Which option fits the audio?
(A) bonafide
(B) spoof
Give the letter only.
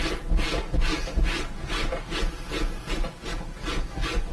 A